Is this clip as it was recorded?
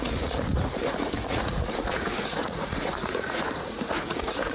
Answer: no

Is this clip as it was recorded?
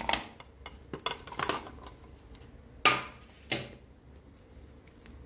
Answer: yes